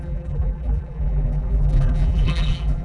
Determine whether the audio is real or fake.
fake